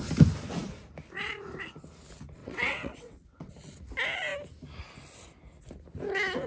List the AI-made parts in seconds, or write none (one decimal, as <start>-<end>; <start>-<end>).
2.4-3.5